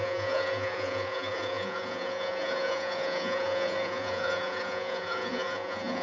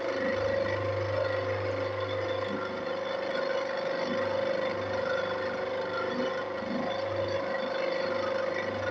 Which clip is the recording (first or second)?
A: second